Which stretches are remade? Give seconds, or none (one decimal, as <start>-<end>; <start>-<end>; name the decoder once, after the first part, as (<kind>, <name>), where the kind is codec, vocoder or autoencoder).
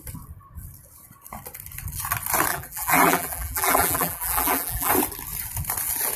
2.5-4.9 (vocoder, BigVGAN v2)